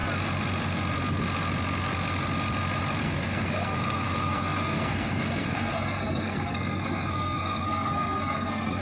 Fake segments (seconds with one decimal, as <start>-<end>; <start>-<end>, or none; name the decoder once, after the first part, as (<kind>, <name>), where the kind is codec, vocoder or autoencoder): 3.0-8.8 (codec, SNAC)